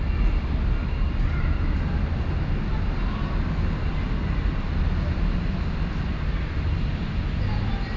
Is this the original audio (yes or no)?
yes